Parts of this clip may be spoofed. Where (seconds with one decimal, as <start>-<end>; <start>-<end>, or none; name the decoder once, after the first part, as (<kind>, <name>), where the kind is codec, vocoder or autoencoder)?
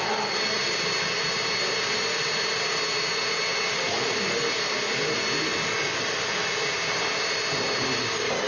none